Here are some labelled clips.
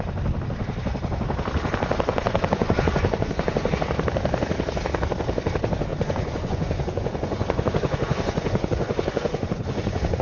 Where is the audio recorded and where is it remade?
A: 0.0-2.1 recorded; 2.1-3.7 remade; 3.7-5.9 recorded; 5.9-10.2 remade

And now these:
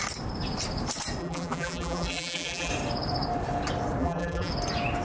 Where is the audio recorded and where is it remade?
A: 0.0-1.2 recorded; 1.2-2.7 remade; 2.7-4.0 recorded; 4.0-4.5 remade; 4.5-5.0 recorded

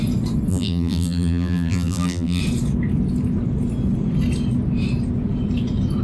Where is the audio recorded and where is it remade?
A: 0.0-0.5 recorded; 0.5-2.4 remade; 2.4-6.0 recorded

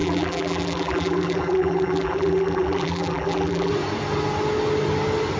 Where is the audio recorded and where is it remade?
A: 0.0-3.7 remade; 3.7-5.4 recorded

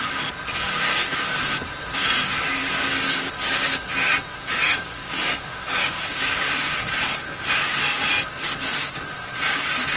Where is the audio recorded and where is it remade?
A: 0.0-2.6 recorded; 2.6-3.3 remade; 3.3-4.6 recorded; 4.6-7.8 remade; 7.8-10.0 recorded

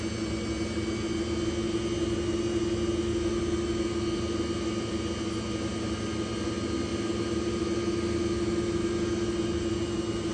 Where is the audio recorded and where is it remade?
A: 0.0-10.3 recorded

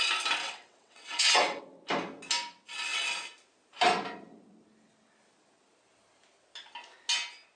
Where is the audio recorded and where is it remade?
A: 0.0-0.4 recorded; 0.4-1.6 remade; 1.6-7.6 recorded

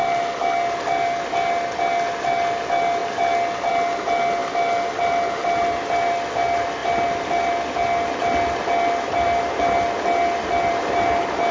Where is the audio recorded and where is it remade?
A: 0.0-11.5 recorded